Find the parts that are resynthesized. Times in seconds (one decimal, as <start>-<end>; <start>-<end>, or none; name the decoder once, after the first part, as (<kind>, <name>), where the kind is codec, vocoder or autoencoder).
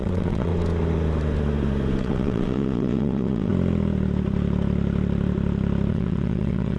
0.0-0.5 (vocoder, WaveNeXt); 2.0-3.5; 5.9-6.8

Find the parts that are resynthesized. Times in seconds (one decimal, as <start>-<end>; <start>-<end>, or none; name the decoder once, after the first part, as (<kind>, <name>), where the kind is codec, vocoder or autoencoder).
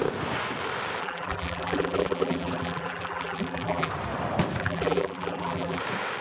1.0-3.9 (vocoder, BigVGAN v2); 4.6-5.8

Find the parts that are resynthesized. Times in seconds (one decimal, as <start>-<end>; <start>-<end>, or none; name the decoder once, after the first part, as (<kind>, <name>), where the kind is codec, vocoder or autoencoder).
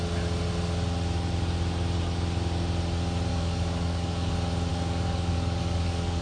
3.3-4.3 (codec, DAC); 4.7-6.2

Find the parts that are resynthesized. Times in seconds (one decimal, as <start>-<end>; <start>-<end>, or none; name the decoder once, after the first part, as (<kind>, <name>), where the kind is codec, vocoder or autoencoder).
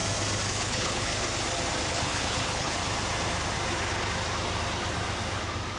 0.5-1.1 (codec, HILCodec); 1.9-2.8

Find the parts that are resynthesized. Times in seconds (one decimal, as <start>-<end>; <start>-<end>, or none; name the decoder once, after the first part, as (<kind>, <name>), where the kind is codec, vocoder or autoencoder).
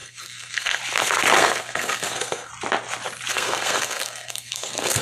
0.0-0.8 (codec, SNAC); 1.4-2.5; 3.3-5.0